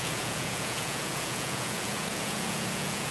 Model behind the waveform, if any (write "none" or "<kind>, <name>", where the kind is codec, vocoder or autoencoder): vocoder, Vocos